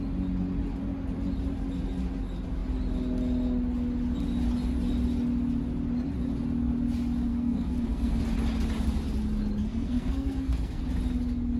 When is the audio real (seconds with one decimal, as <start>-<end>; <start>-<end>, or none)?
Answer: 0.0-7.3; 8.2-9.7; 10.8-11.6